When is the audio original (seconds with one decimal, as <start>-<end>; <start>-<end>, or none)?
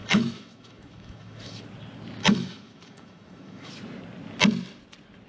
1.6-2.2; 3.7-5.3